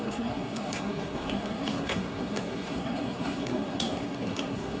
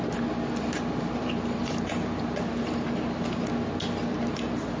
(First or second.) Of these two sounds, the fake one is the first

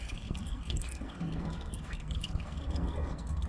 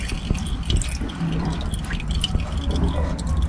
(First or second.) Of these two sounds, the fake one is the first